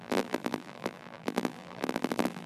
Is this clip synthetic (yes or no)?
yes